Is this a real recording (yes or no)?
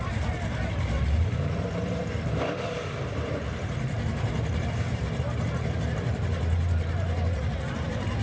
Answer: no